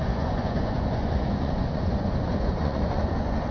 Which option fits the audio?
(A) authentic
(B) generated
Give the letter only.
B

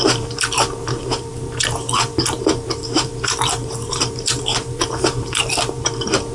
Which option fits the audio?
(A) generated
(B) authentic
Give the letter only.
A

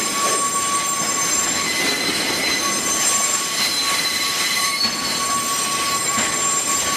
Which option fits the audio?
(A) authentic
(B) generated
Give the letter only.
A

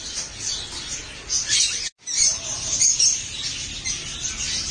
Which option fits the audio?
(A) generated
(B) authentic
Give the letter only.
B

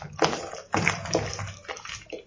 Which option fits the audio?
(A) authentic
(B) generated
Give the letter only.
A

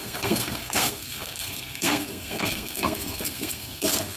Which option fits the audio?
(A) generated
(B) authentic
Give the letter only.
A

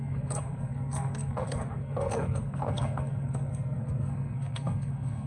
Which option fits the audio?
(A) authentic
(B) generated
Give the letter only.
B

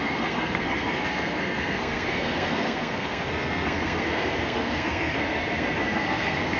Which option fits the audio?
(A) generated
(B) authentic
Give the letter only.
A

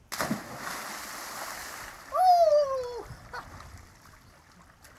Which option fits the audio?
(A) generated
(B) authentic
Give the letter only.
B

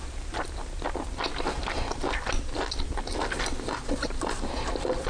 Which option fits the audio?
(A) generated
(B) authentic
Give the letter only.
B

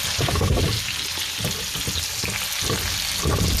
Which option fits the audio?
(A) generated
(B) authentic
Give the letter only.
B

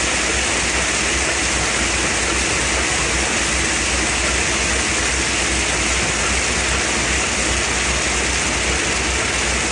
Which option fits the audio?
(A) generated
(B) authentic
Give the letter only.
B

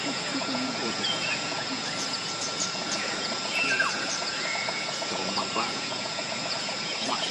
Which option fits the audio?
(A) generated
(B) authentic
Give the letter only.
A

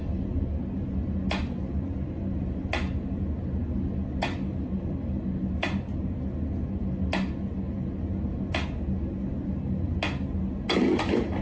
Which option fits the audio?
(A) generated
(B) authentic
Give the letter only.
B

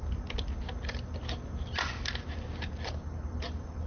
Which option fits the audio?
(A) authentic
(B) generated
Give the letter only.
A